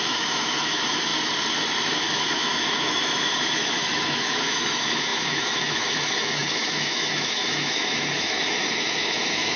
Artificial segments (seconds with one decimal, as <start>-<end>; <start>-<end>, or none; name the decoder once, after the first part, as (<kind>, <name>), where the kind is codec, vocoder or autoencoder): 0.0-1.1 (autoencoder, DAC-VAE); 1.9-9.6